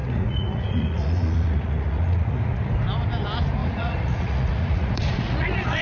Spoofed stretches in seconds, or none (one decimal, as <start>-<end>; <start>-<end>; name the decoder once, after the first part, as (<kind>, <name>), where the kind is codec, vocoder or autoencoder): 0.0-2.7 (vocoder, Vocos); 3.6-5.8